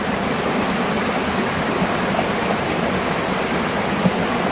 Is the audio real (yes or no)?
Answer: yes